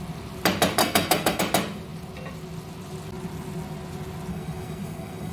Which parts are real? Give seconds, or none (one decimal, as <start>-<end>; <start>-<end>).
0.0-0.8; 1.4-4.3